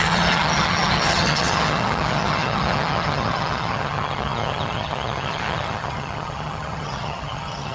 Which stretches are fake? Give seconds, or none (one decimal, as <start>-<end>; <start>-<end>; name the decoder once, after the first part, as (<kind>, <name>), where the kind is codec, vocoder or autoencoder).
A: 0.0-7.7 (vocoder, HiFi-GAN)